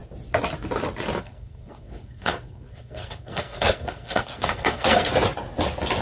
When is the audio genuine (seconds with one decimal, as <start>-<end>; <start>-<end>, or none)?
0.0-1.2; 5.1-6.0